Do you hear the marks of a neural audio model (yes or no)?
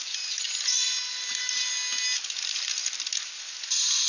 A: no